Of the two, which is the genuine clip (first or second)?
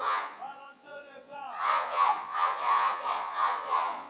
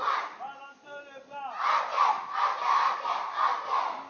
second